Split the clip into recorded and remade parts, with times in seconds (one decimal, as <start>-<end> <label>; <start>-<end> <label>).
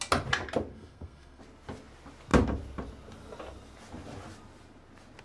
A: 0.0-0.7 recorded; 0.7-1.4 remade; 1.4-5.2 recorded